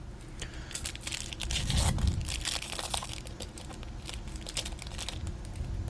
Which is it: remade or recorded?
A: recorded